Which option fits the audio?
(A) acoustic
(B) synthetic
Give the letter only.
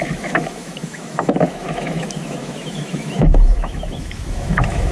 B